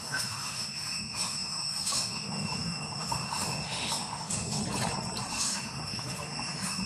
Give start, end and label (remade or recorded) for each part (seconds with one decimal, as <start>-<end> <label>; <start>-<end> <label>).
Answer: 0.0-4.6 remade; 4.6-5.3 recorded; 5.3-6.9 remade